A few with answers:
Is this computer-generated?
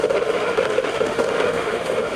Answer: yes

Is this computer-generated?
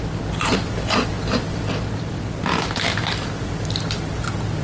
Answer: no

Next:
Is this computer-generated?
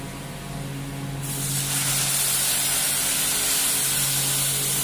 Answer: no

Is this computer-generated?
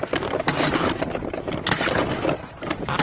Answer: no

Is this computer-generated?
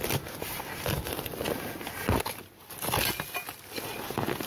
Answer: no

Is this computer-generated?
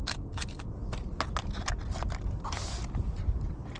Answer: no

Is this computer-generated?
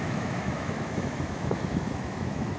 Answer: yes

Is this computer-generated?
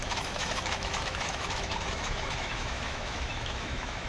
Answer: yes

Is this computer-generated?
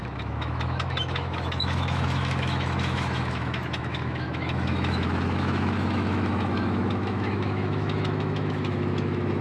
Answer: yes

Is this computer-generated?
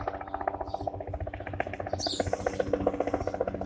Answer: no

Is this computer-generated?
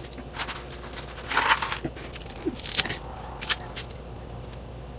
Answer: no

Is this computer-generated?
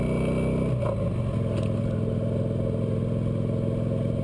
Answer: no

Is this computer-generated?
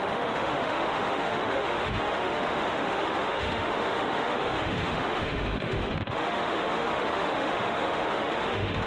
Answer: yes